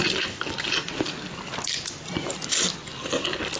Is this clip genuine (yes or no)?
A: yes